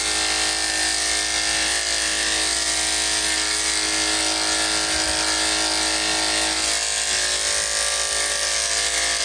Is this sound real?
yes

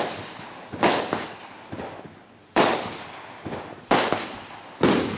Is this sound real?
yes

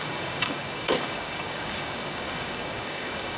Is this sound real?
no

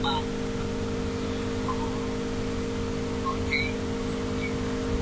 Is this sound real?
yes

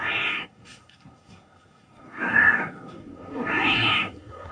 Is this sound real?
no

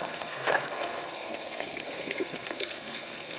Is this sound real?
no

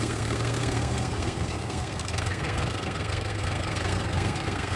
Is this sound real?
no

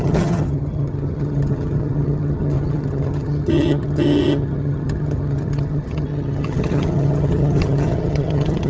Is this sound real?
no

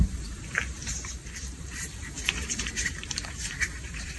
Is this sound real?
no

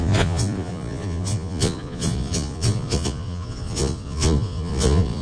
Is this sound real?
no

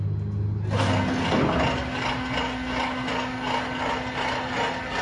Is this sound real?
yes